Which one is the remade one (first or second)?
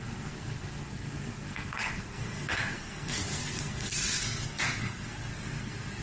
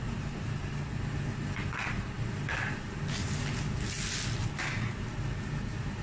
first